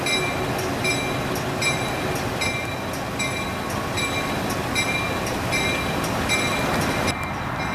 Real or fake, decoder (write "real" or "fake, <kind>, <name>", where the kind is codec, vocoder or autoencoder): real